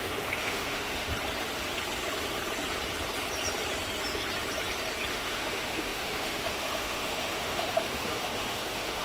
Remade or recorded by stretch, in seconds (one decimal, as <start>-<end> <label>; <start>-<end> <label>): 0.0-1.1 remade; 1.1-5.1 recorded; 5.1-9.0 remade